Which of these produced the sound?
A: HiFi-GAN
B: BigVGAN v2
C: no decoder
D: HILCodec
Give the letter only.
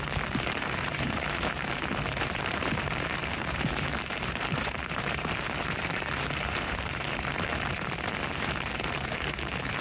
B